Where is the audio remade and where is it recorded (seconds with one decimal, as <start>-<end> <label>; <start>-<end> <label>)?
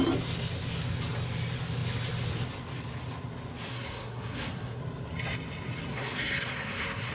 0.0-3.7 recorded; 3.7-4.8 remade; 4.8-5.9 recorded; 5.9-7.1 remade